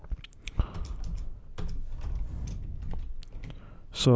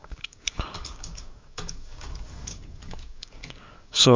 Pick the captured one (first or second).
first